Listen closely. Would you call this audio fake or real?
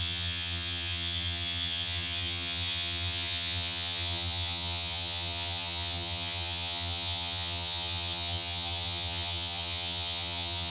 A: fake